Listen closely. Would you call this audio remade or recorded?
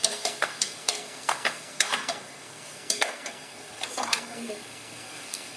remade